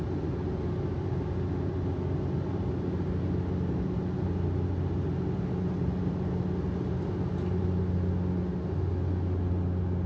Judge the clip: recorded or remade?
recorded